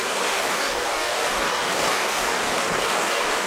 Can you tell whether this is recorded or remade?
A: remade